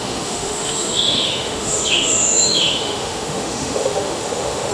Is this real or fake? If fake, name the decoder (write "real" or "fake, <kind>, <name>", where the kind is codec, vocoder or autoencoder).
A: fake, autoencoder, DAC-VAE